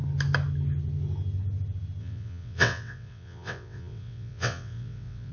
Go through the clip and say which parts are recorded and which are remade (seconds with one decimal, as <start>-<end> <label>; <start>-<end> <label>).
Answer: 0.0-2.0 recorded; 2.0-5.3 remade